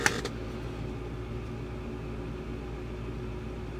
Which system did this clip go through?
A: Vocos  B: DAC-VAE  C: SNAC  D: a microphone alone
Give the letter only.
D